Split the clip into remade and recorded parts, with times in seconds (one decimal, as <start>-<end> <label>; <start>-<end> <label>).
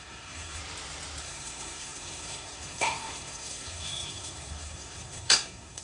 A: 0.0-0.6 remade; 0.6-1.2 recorded; 1.2-5.8 remade